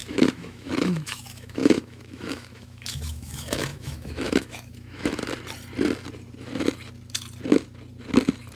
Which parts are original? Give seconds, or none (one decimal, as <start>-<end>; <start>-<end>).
5.2-8.6